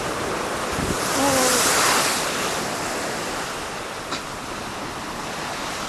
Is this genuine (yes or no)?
yes